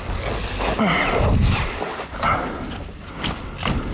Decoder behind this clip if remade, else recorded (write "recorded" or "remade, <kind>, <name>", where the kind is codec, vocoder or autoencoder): recorded